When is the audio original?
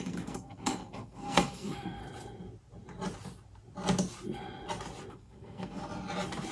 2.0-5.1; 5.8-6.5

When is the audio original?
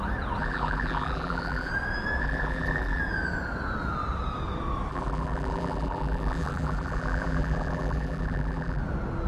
0.0-0.4; 1.7-2.2; 3.0-4.9; 8.8-9.3